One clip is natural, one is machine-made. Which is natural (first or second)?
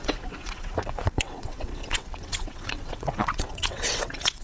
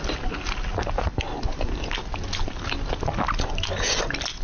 second